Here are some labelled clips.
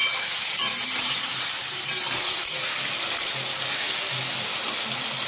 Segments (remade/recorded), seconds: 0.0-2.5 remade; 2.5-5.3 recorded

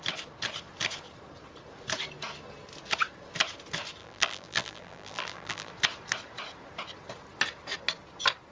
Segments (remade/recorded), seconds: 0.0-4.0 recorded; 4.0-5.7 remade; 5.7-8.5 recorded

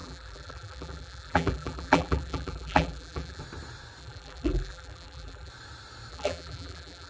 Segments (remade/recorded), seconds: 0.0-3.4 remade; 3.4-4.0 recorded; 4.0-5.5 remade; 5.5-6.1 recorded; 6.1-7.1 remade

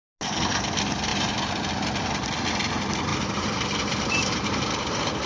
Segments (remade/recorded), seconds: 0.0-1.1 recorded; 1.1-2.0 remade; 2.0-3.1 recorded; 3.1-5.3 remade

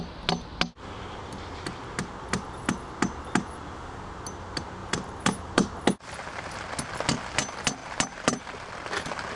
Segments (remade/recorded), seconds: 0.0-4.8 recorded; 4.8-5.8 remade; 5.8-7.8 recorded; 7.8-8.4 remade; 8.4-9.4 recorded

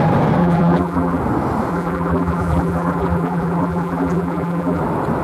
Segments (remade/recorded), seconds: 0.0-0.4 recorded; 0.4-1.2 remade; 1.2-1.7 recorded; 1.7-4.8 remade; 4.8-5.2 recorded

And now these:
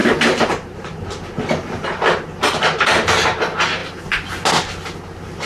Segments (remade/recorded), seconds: 0.0-1.0 remade; 1.0-5.5 recorded